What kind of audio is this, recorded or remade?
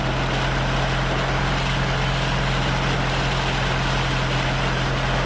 recorded